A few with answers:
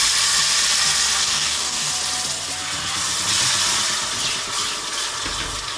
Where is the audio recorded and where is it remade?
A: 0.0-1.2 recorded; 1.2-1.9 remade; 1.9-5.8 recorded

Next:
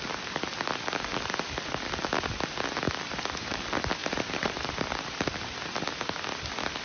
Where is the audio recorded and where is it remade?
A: 0.0-4.0 recorded; 4.0-4.7 remade; 4.7-6.8 recorded